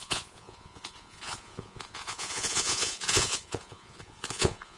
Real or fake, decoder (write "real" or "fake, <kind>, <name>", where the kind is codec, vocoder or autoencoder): fake, vocoder, Vocos